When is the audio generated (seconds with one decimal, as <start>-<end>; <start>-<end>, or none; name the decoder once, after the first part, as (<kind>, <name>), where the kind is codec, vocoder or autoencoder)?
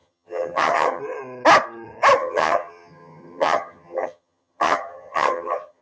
0.0-1.0 (vocoder, HiFi-GAN); 2.2-5.8